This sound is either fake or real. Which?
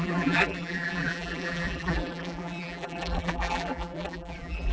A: fake